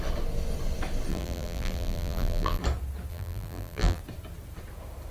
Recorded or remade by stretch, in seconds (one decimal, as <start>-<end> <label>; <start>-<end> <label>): 0.0-1.1 recorded; 1.1-2.6 remade; 2.6-3.1 recorded; 3.1-4.0 remade; 4.0-5.1 recorded